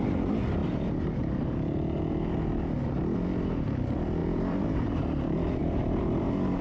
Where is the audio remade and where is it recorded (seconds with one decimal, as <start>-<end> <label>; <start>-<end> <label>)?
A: 0.0-0.6 recorded; 0.6-2.0 remade; 2.0-4.2 recorded; 4.2-5.0 remade; 5.0-5.6 recorded; 5.6-6.6 remade